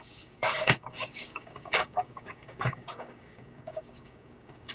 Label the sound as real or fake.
fake